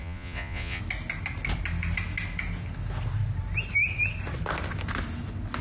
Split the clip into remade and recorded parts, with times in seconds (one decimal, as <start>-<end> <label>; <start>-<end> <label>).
0.0-0.8 remade; 0.8-5.6 recorded